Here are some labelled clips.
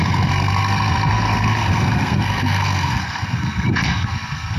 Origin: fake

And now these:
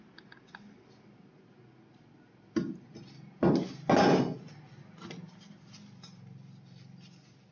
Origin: real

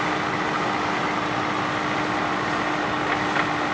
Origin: real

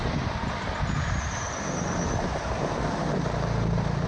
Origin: real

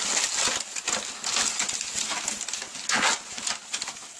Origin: real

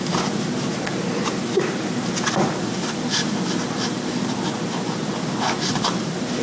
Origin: real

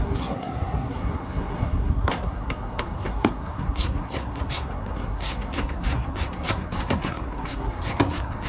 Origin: fake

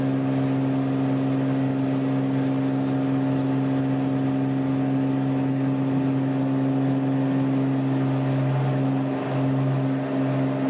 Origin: real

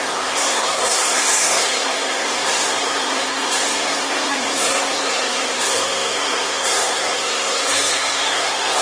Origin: fake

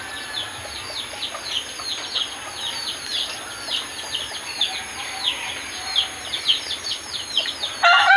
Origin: real